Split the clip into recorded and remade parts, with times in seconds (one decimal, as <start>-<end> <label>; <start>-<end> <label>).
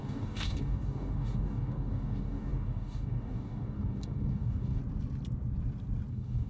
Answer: 0.0-4.8 remade; 4.8-6.1 recorded; 6.1-6.5 remade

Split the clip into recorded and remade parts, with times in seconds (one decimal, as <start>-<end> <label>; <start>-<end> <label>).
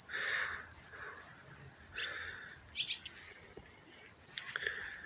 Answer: 0.0-5.1 recorded